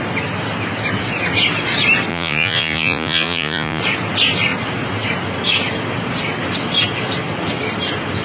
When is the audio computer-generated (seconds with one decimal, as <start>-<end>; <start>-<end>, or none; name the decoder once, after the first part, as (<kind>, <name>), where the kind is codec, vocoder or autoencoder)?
2.1-3.8 (vocoder, Vocos)